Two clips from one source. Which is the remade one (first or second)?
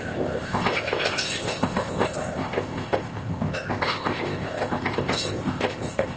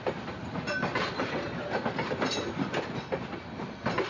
first